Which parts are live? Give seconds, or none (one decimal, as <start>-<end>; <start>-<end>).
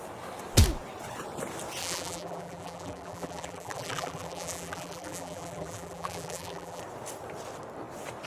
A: 0.0-1.8; 6.8-8.3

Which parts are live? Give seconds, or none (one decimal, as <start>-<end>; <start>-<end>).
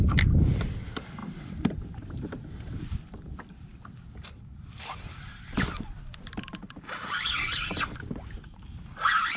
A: 3.7-5.0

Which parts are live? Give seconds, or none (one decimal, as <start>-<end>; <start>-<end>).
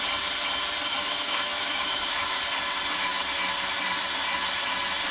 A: 0.0-0.9; 2.4-5.1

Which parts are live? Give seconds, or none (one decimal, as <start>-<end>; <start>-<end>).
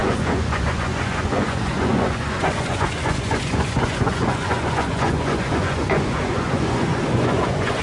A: none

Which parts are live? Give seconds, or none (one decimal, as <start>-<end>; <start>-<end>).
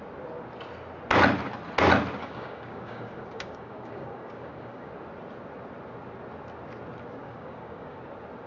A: 0.0-2.2; 4.9-7.2; 8.0-8.5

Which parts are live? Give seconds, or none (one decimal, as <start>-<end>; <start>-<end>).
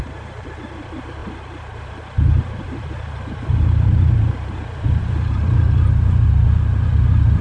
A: 0.0-1.2; 5.6-7.4